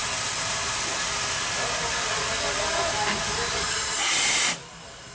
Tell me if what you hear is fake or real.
real